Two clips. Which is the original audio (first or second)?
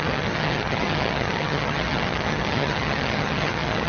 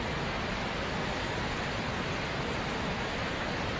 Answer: second